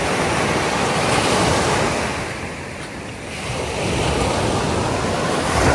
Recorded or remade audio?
recorded